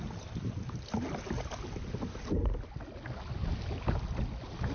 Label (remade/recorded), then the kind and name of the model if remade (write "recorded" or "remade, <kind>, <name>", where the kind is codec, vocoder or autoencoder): recorded